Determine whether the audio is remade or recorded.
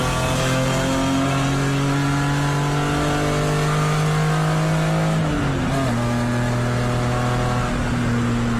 recorded